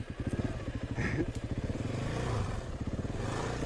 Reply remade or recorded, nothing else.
remade